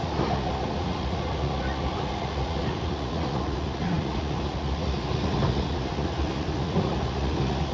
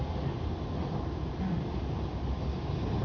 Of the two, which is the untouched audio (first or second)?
second